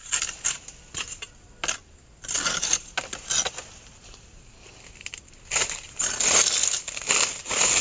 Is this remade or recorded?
recorded